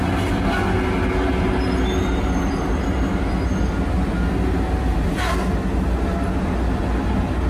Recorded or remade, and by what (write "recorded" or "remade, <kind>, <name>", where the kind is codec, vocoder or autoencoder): recorded